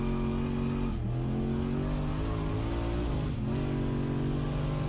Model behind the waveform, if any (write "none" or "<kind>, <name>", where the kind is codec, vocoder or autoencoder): none